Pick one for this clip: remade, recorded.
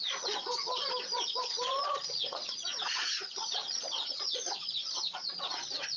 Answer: remade